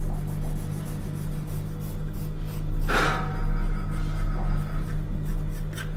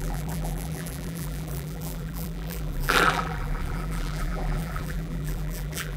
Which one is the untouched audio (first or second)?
first